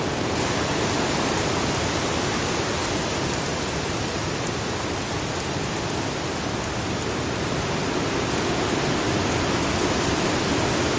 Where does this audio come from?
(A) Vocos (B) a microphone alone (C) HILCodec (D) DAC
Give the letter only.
B